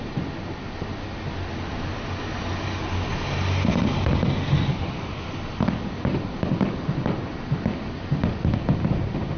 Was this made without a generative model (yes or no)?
yes